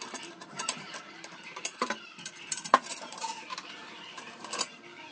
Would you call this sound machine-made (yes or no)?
yes